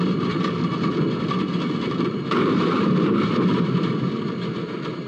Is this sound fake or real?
fake